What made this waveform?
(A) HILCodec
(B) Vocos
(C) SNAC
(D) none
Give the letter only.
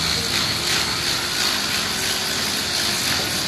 D